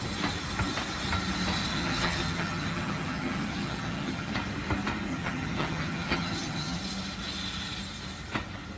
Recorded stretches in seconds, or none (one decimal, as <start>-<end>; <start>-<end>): 0.0-1.7; 4.3-5.1; 6.8-8.8